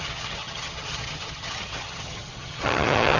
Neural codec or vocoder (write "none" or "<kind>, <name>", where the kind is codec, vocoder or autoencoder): vocoder, HiFi-GAN